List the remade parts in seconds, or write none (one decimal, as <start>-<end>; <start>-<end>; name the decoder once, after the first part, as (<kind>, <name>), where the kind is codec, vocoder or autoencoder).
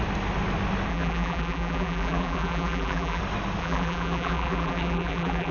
0.9-3.2 (vocoder, BigVGAN v2); 3.6-5.5